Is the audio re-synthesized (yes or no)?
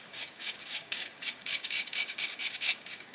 yes